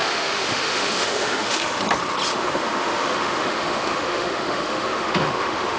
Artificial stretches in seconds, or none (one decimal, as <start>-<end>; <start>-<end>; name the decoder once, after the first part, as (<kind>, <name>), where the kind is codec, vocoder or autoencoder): 0.0-1.8 (autoencoder, DAC-VAE); 2.3-5.8